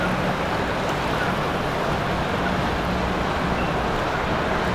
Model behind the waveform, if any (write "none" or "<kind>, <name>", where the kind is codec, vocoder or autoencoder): none